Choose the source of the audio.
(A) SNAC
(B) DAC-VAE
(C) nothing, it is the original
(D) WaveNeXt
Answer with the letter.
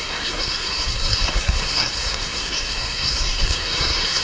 A